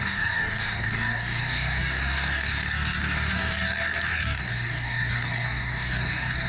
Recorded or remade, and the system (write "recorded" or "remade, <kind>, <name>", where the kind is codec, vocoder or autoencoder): remade, codec, DAC